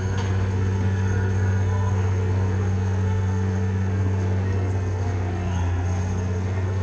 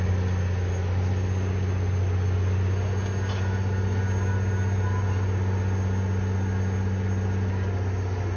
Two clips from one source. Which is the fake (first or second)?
first